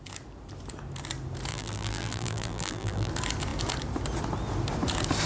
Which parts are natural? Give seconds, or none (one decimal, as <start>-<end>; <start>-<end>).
0.0-1.5; 3.1-5.3